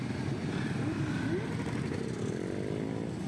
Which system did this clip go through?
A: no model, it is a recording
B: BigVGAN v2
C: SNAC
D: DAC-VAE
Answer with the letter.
A